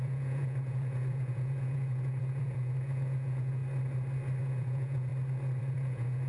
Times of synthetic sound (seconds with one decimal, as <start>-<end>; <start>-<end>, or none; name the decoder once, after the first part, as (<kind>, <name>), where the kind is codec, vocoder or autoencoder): 0.0-3.6 (vocoder, Vocos); 4.4-5.1; 5.6-6.3